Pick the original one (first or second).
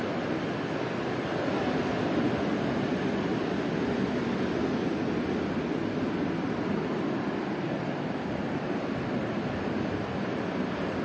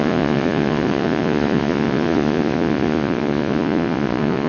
first